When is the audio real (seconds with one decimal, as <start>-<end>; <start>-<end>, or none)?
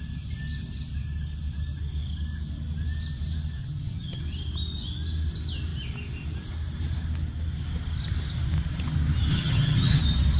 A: 0.0-3.6; 4.2-9.3; 10.0-10.4